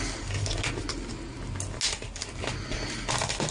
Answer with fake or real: real